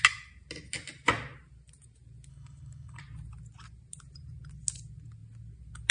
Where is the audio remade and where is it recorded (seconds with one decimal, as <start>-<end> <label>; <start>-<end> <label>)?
0.0-2.3 recorded; 2.3-3.0 remade; 3.0-5.9 recorded